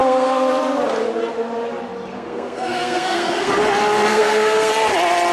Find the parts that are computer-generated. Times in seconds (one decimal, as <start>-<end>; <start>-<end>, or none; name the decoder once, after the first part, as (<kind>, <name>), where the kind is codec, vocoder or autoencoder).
0.0-0.5 (codec, SNAC); 2.1-3.5; 4.1-4.7